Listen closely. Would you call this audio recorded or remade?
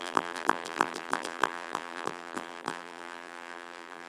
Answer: remade